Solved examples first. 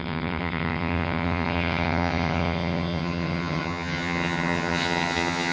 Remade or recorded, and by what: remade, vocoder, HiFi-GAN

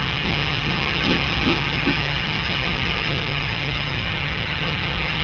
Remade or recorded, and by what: remade, vocoder, HiFi-GAN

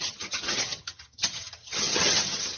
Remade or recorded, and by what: remade, vocoder, HiFi-GAN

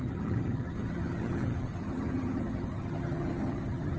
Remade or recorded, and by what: remade, vocoder, HiFi-GAN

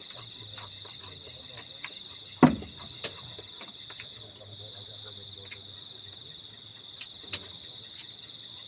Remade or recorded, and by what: recorded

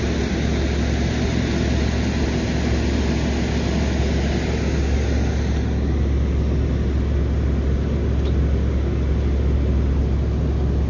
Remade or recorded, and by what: recorded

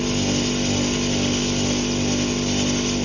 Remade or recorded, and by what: recorded